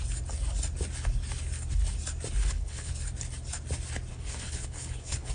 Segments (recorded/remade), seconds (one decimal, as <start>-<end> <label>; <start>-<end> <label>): 0.0-2.4 recorded; 2.4-2.9 remade; 2.9-4.1 recorded; 4.1-5.3 remade